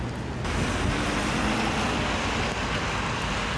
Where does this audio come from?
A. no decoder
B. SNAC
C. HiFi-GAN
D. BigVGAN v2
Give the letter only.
A